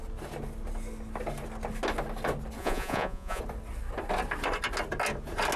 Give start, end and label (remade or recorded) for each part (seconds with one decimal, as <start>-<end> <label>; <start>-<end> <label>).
0.0-2.6 recorded; 2.6-3.4 remade; 3.4-5.6 recorded